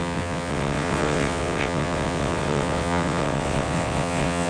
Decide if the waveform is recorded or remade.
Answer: remade